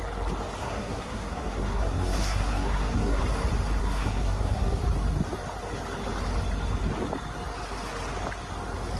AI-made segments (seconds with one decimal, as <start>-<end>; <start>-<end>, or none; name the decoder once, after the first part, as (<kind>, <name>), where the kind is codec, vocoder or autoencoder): 0.6-3.2 (codec, SNAC); 3.8-4.8